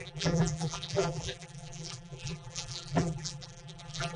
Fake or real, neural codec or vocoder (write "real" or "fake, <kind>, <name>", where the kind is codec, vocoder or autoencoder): fake, vocoder, BigVGAN v2